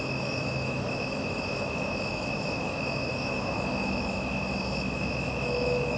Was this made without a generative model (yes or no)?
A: no